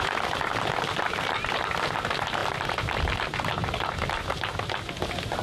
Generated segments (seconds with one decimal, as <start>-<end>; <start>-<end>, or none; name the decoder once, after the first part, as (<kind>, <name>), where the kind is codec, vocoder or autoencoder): none